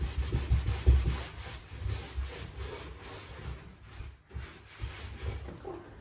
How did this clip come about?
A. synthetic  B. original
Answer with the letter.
B